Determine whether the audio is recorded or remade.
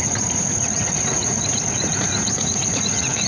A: remade